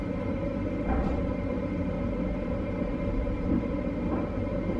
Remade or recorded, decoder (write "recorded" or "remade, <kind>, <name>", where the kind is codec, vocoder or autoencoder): remade, vocoder, BigVGAN v2